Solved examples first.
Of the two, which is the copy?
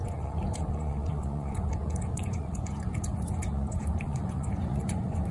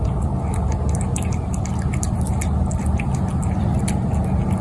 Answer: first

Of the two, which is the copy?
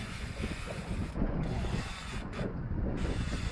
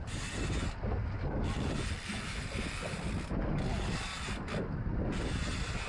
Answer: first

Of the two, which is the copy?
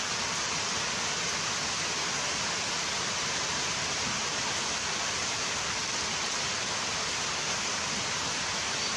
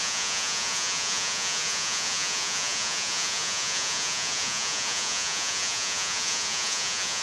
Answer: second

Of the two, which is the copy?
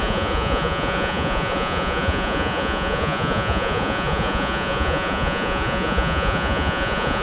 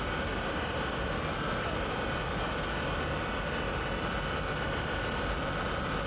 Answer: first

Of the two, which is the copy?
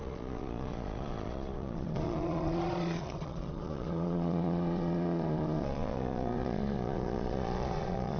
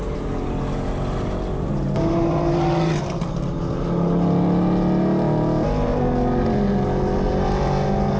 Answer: first